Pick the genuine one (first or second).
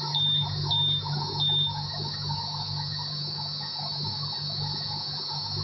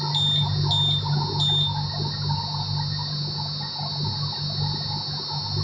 second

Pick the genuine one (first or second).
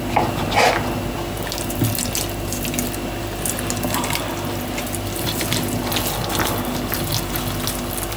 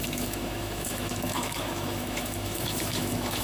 first